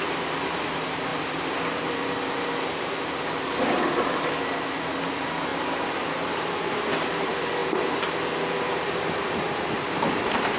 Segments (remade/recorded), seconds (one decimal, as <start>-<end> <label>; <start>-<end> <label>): 0.0-10.6 remade

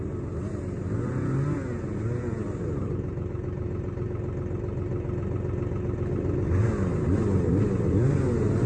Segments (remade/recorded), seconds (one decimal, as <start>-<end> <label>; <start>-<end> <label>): 0.0-8.7 recorded

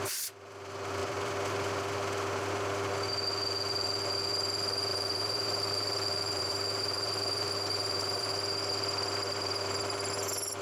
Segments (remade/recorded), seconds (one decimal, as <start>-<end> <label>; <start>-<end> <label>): 0.0-4.9 recorded; 4.9-8.3 remade; 8.3-10.6 recorded

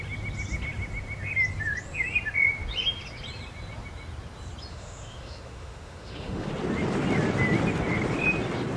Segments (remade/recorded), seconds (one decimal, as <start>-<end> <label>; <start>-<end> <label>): 0.0-4.7 recorded; 4.7-6.5 remade; 6.5-8.8 recorded